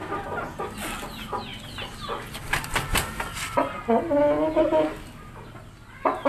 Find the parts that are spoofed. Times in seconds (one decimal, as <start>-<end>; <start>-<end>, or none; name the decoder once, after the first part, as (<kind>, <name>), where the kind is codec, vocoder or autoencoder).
none